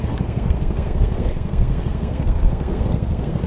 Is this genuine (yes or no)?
no